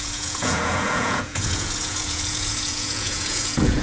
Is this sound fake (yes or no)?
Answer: yes